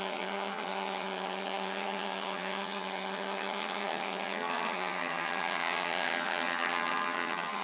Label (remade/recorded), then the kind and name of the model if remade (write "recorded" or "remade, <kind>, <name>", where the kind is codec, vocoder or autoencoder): remade, vocoder, HiFi-GAN